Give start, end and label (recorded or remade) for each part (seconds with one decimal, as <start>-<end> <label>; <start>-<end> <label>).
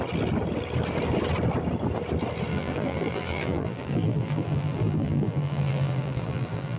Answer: 0.0-2.5 recorded; 2.5-6.8 remade